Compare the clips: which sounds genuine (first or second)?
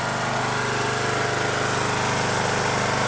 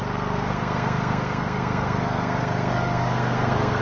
first